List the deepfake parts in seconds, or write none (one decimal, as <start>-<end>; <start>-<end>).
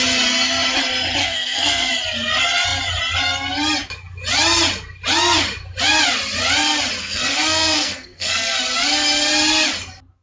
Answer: 1.2-1.9; 7.0-8.6